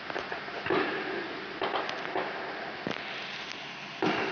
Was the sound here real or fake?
real